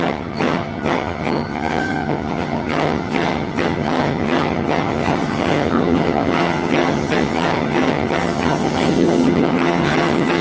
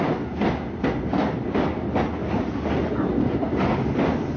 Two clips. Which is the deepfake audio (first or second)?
first